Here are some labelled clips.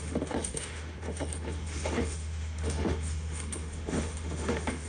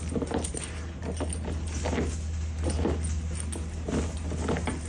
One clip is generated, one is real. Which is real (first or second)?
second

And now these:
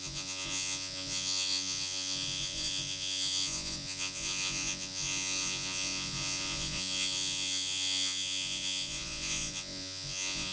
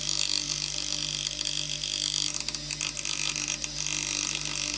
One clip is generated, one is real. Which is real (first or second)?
second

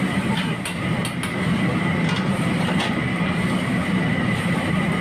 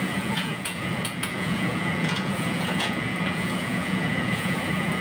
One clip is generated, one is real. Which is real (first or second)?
first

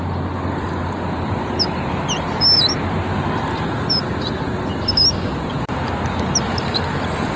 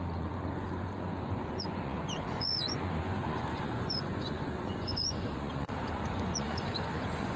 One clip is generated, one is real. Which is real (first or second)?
first